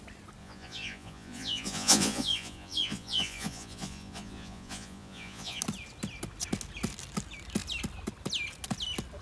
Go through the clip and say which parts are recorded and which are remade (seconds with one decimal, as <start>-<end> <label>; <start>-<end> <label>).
0.0-0.4 recorded; 0.4-5.6 remade; 5.6-9.2 recorded

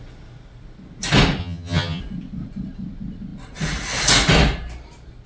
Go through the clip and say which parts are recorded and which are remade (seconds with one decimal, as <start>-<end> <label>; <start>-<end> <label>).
0.0-1.4 recorded; 1.4-2.0 remade; 2.0-5.3 recorded

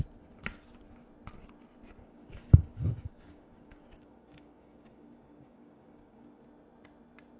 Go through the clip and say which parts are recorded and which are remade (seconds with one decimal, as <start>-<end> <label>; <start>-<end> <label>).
0.0-2.0 recorded; 2.0-6.4 remade; 6.4-7.4 recorded

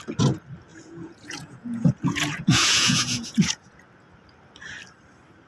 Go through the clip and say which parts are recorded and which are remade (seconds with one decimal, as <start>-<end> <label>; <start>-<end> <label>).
0.0-0.7 recorded; 0.7-3.8 remade; 3.8-5.5 recorded

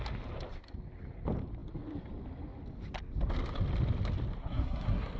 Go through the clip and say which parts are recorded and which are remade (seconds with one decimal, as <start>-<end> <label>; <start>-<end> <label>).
0.0-4.4 recorded; 4.4-5.2 remade

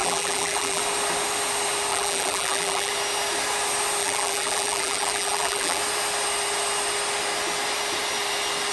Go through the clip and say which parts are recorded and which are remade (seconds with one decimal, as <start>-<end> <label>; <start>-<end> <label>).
0.0-0.8 remade; 0.8-1.9 recorded; 1.9-2.9 remade; 2.9-4.0 recorded; 4.0-5.8 remade; 5.8-8.7 recorded

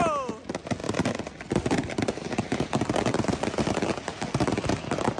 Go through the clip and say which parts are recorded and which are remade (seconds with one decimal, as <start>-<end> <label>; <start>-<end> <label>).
0.0-5.2 recorded

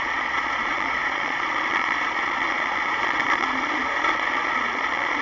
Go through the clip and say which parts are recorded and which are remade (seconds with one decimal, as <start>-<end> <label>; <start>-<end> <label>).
0.0-5.2 remade